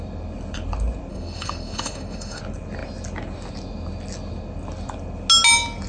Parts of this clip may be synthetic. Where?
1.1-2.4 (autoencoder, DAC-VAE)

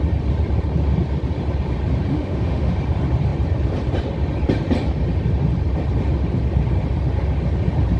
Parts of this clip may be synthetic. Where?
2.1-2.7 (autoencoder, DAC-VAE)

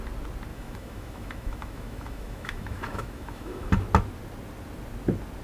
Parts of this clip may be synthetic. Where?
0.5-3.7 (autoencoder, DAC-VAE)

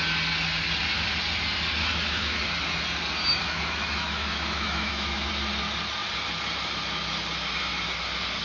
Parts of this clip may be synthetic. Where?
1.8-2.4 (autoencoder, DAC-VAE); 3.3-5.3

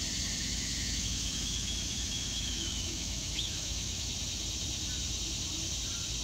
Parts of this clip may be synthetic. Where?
0.4-4.1 (autoencoder, DAC-VAE)

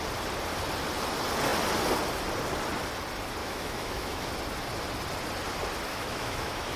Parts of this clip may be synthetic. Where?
3.4-4.3 (autoencoder, DAC-VAE); 5.9-6.8

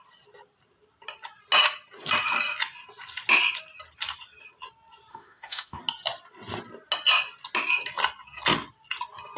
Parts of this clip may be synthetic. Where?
5.1-5.8 (autoencoder, DAC-VAE)